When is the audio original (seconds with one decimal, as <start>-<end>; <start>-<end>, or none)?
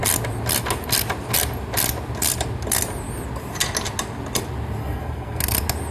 0.0-4.8; 5.4-5.9